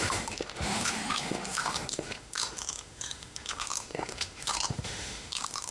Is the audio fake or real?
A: fake